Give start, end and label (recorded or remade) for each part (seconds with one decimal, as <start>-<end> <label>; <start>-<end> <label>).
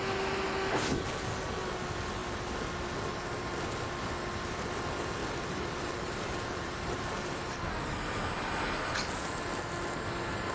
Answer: 0.0-5.2 recorded; 5.2-7.6 remade; 7.6-10.5 recorded